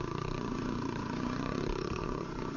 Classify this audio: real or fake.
fake